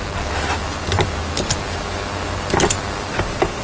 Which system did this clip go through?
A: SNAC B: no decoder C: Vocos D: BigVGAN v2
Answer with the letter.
B